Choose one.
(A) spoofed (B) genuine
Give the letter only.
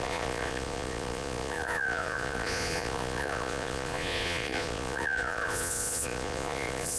A